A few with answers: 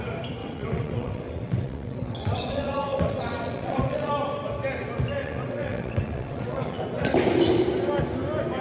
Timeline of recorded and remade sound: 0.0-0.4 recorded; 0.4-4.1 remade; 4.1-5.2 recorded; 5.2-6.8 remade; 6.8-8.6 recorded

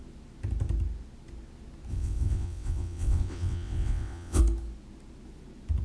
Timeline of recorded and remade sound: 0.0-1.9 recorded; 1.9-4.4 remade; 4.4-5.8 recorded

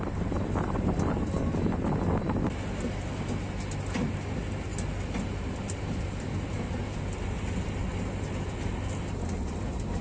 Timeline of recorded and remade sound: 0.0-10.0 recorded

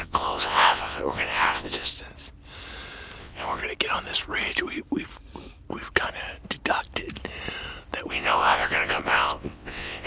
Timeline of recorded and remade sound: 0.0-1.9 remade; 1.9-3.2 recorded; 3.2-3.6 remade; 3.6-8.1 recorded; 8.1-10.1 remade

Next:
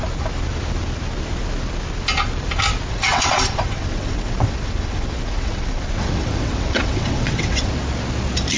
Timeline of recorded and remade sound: 0.0-2.9 recorded; 2.9-7.7 remade; 7.7-8.6 recorded